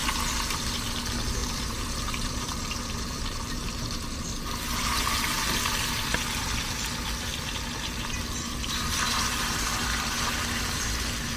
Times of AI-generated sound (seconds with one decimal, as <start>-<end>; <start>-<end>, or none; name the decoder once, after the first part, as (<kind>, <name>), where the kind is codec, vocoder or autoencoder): 1.4-4.2 (vocoder, BigVGAN v2)